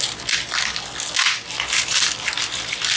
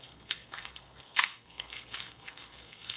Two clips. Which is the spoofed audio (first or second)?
second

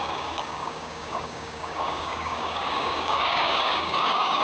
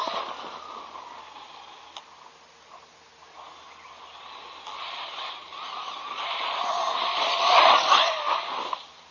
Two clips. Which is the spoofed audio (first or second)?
first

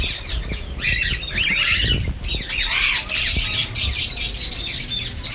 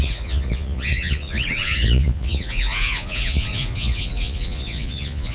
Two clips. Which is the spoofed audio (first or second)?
second